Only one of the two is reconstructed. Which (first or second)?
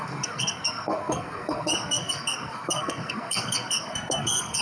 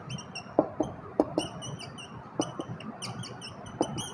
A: first